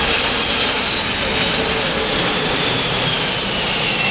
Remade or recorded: recorded